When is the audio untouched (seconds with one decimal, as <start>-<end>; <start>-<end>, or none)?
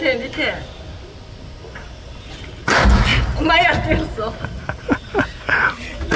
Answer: 0.0-6.2